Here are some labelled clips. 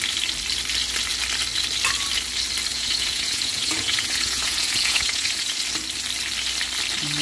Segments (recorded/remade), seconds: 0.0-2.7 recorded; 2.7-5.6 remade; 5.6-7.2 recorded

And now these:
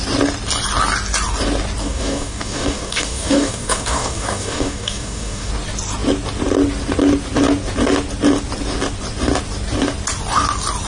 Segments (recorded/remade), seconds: 0.0-1.8 recorded; 1.8-5.5 remade; 5.5-10.9 recorded

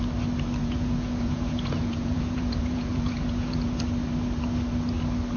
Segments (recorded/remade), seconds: 0.0-0.6 recorded; 0.6-3.8 remade; 3.8-5.4 recorded

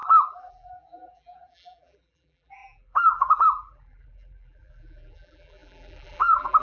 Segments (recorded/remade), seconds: 0.0-6.6 remade

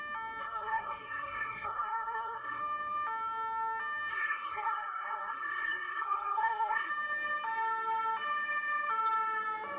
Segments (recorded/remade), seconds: 0.0-0.4 recorded; 0.4-2.6 remade; 2.6-4.1 recorded; 4.1-6.9 remade; 6.9-9.8 recorded

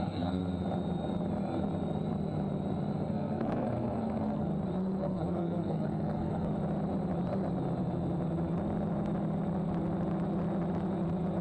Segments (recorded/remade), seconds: 0.0-0.4 remade; 0.4-3.1 recorded; 3.1-4.5 remade; 4.5-5.0 recorded; 5.0-6.5 remade; 6.5-11.4 recorded